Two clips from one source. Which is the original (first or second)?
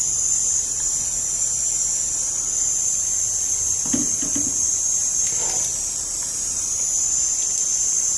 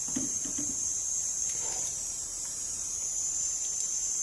first